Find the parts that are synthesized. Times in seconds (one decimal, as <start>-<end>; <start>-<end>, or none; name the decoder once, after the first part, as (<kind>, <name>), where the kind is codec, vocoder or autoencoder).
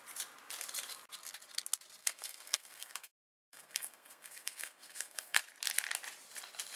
2.0-5.4 (codec, SNAC)